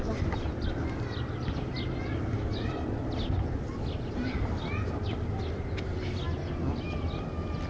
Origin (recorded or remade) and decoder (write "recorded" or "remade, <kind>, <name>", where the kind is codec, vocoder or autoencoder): recorded